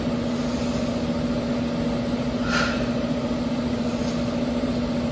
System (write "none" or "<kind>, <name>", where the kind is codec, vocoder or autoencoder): none